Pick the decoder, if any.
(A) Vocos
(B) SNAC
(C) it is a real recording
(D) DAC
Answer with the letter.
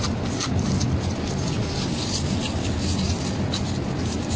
C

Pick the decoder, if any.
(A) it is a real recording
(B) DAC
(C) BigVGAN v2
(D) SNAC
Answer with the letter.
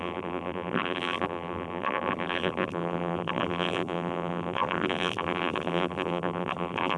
C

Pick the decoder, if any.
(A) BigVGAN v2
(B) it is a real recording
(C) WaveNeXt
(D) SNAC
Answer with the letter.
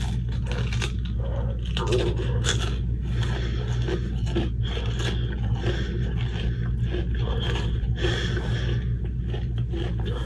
B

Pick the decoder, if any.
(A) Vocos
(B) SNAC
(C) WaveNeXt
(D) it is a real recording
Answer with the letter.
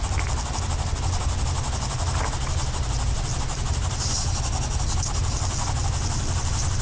D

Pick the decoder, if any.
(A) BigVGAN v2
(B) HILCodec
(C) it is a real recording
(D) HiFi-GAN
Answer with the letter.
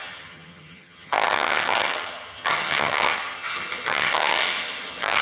D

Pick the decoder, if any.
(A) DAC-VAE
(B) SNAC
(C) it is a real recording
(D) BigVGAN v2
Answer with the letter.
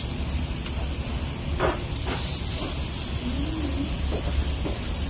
C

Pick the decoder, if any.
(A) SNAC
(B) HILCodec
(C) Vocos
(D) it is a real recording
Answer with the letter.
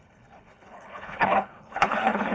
B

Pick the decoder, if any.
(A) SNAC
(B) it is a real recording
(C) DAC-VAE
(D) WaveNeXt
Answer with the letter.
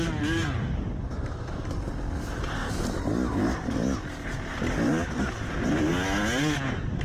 B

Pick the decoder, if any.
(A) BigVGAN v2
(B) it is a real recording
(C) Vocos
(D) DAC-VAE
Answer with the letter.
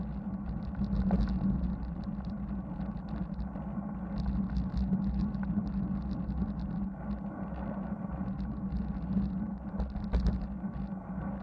B